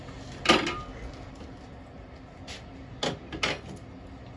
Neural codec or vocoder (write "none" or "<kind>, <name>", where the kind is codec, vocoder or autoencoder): none